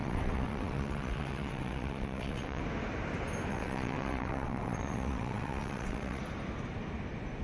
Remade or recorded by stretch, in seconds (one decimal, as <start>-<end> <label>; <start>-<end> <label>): 0.0-2.6 remade; 2.6-3.5 recorded; 3.5-6.2 remade; 6.2-7.4 recorded